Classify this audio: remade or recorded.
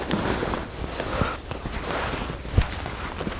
recorded